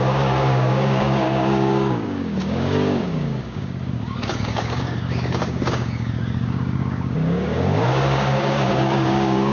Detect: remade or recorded remade